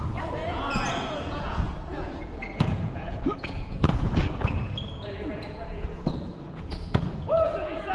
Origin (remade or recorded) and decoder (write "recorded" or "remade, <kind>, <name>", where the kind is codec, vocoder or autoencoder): remade, vocoder, Vocos